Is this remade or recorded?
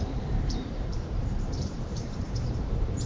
remade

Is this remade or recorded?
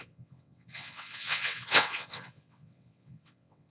remade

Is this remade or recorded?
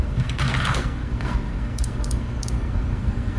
remade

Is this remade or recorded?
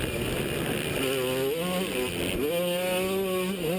recorded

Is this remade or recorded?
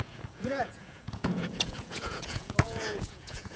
remade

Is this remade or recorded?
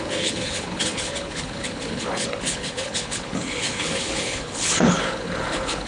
remade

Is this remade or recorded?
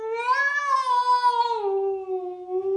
recorded